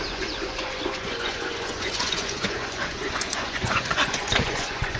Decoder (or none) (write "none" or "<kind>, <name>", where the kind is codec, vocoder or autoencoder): vocoder, Vocos